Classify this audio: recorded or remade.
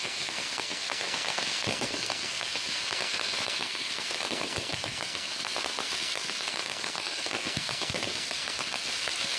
remade